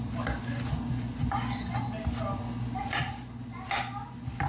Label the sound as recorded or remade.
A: recorded